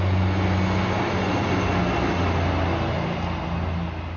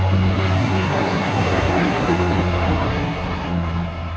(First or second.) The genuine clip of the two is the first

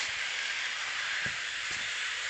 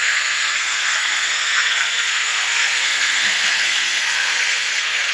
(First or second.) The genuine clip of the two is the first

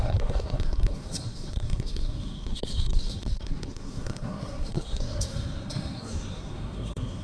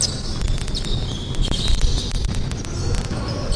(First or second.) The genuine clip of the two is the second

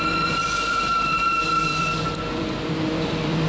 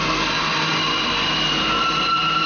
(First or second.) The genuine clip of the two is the second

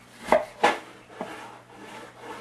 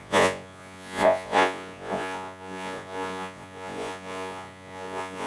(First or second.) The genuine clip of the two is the first